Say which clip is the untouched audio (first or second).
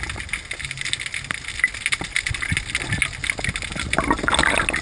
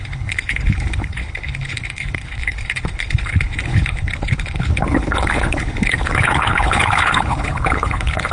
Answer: first